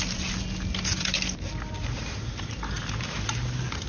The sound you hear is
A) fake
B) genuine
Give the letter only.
B